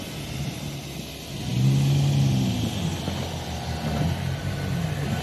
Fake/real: real